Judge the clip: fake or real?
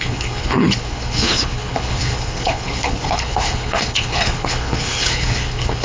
fake